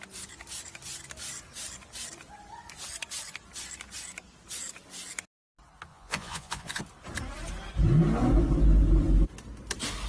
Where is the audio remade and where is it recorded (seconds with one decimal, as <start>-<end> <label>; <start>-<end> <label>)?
0.0-5.9 recorded; 5.9-6.8 remade; 6.8-10.1 recorded